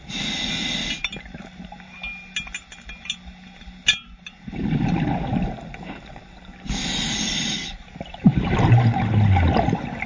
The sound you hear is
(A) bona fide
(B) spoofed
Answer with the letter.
A